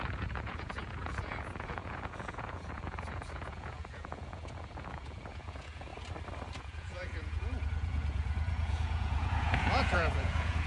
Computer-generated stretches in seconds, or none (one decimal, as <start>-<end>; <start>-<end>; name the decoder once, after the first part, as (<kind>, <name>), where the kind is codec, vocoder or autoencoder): 0.0-5.9 (vocoder, Vocos); 6.6-10.7